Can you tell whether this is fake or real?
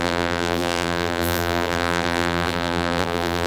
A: fake